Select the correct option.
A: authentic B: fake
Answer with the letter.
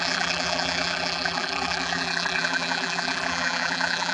B